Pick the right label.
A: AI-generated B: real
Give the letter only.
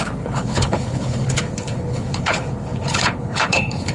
A